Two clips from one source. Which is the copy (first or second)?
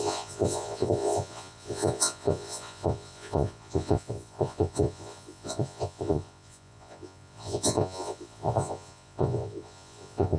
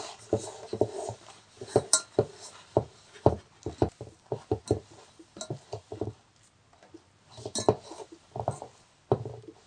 first